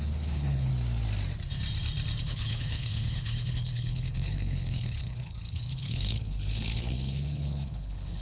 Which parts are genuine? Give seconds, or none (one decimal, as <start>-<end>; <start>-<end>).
0.7-2.2